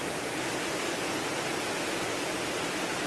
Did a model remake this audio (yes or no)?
no